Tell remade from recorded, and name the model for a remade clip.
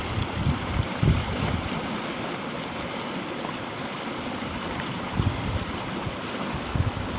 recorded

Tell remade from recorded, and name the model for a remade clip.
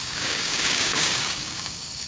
remade, codec, DAC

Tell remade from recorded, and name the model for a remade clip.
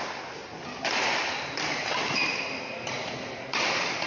recorded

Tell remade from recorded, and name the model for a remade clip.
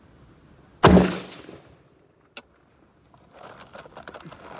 recorded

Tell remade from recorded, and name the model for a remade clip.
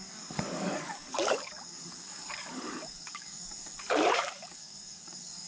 remade, codec, DAC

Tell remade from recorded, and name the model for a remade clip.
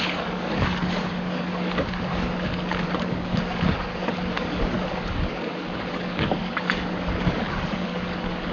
remade, codec, DAC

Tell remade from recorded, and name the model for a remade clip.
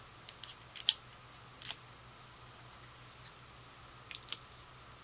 recorded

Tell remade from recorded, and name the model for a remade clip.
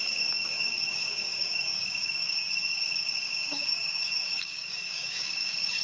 remade, codec, DAC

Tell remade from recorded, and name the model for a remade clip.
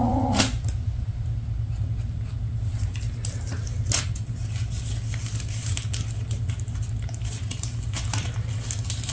recorded